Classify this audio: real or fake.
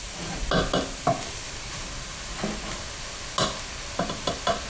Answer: real